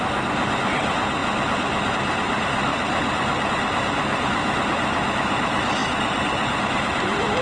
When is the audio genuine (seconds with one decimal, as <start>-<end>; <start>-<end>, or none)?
1.2-1.9; 2.7-3.5